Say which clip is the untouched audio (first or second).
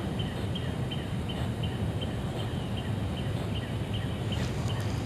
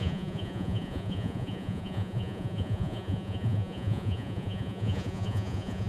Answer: first